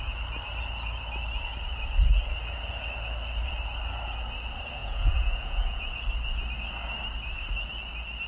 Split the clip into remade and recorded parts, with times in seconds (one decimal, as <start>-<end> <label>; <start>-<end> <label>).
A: 0.0-4.8 recorded; 4.8-5.8 remade; 5.8-8.3 recorded